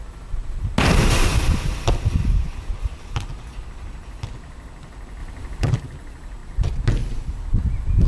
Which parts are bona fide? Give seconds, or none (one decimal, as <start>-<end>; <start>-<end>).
0.0-1.3; 2.6-5.2; 5.8-8.1